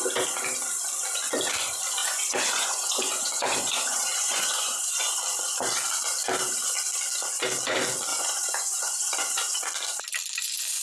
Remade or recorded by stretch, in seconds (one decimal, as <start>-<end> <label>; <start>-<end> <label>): 0.0-2.0 recorded; 2.0-5.2 remade; 5.2-8.1 recorded; 8.1-9.6 remade; 9.6-10.8 recorded